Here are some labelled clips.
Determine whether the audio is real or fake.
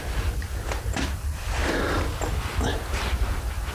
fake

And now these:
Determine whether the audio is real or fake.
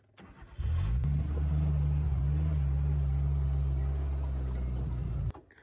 real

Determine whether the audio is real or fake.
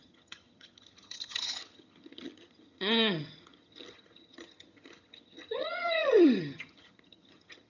fake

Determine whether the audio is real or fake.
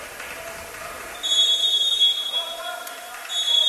real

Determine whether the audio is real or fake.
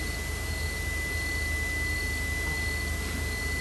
real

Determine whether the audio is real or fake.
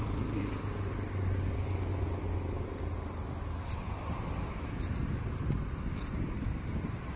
real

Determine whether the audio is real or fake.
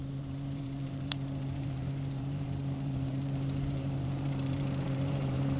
fake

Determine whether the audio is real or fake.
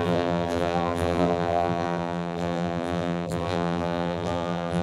fake